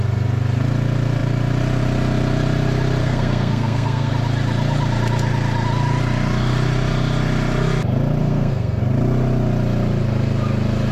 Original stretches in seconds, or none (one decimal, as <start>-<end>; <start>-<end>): 0.0-3.0; 4.1-8.2; 8.8-10.9